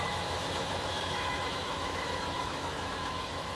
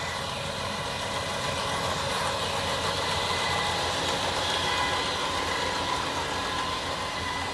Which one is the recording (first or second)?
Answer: second